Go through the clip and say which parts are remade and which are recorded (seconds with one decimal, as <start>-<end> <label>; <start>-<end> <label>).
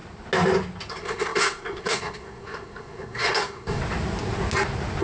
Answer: 0.0-0.9 recorded; 0.9-3.8 remade; 3.8-5.0 recorded